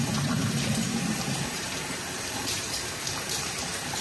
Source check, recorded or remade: remade